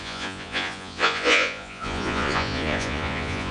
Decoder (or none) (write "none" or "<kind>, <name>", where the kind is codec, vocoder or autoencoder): vocoder, Vocos